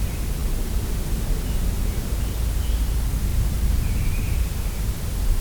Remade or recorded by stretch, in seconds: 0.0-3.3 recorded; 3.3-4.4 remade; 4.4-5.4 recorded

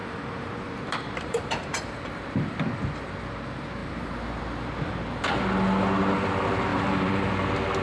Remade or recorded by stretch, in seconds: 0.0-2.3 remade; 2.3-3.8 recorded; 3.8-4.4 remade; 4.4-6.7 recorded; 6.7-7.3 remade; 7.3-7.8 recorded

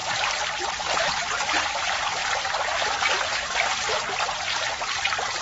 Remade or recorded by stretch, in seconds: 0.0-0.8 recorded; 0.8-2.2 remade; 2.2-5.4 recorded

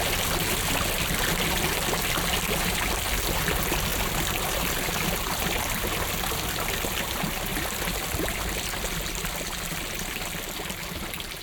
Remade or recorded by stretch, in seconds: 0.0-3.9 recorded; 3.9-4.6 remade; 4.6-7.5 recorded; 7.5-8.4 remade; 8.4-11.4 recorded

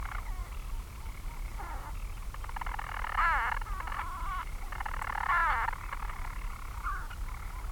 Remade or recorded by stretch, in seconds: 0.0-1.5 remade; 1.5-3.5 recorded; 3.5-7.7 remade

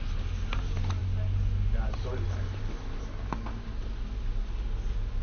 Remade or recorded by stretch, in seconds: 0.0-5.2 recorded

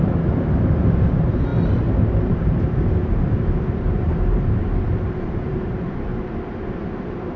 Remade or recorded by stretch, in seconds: 0.0-6.1 remade; 6.1-6.8 recorded; 6.8-7.4 remade